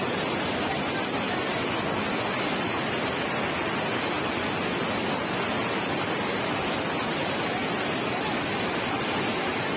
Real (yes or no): yes